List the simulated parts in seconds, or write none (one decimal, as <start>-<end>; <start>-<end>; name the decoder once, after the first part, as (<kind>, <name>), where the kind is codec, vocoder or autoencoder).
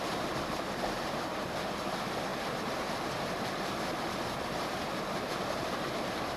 2.3-5.3 (vocoder, BigVGAN v2)